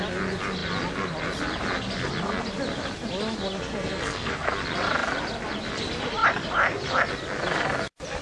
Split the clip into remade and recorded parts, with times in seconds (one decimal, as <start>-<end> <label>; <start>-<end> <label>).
0.0-3.7 recorded; 3.7-4.5 remade; 4.5-8.2 recorded